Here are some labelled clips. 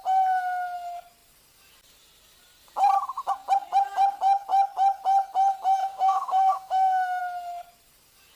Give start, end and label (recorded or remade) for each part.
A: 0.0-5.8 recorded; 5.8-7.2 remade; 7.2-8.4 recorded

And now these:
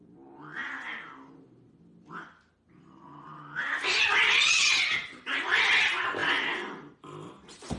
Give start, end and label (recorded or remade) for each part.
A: 0.0-7.8 recorded